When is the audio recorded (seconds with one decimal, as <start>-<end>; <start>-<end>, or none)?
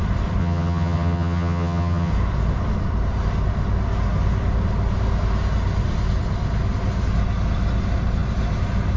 0.0-0.4; 2.1-9.0